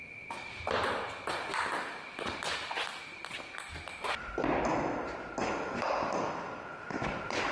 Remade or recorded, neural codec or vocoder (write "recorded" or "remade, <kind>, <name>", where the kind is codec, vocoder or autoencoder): recorded